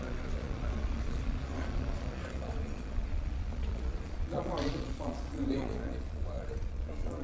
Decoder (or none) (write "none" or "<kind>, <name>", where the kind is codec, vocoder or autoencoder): vocoder, Vocos